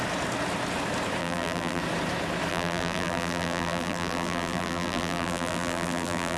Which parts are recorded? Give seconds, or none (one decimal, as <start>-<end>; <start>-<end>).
0.0-1.2; 1.8-2.5